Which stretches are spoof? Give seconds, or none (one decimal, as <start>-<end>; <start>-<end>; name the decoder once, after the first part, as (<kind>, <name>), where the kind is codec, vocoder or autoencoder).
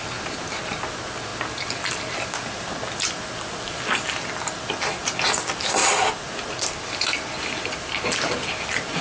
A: none